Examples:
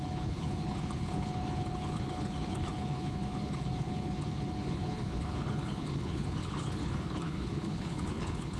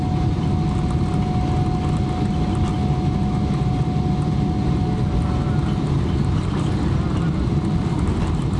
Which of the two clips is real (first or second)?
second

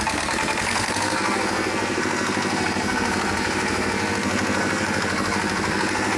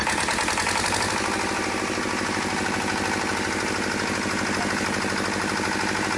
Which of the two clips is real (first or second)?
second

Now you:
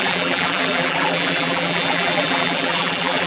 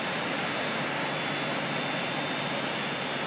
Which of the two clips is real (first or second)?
second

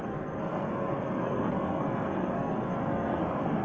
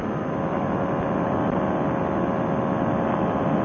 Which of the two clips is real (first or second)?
second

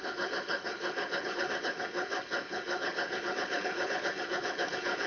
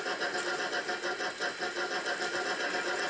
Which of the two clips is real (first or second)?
second